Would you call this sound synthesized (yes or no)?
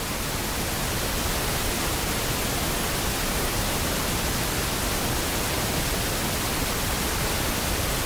no